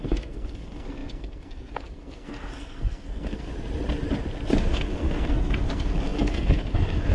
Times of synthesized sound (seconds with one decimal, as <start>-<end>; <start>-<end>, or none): 0.0-3.5; 4.6-7.1